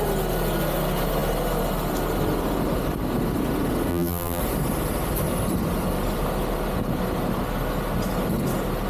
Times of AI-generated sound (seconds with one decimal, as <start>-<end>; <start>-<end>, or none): 3.9-4.4